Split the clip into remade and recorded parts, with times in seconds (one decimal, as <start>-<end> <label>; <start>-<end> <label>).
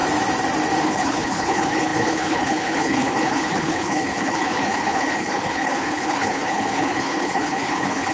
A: 0.0-0.8 recorded; 0.8-8.1 remade